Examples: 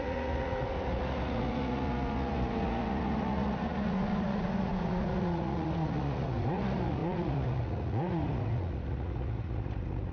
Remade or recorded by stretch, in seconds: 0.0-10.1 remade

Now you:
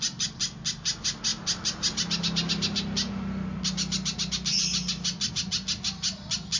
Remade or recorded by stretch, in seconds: 0.0-6.6 recorded

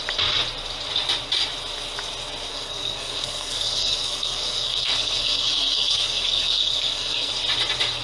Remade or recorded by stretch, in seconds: 0.0-2.5 recorded; 2.5-7.3 remade; 7.3-8.0 recorded

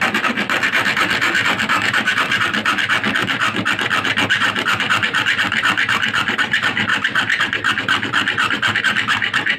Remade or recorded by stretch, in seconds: 0.0-9.6 recorded

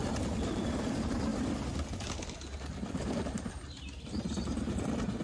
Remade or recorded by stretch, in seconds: 0.0-5.2 recorded

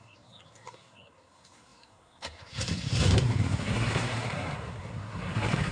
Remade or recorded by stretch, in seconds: 0.0-5.7 remade